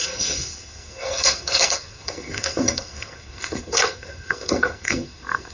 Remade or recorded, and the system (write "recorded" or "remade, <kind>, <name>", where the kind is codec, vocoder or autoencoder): remade, codec, SNAC